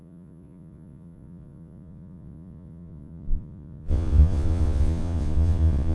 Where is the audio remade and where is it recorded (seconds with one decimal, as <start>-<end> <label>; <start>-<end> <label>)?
0.0-5.9 remade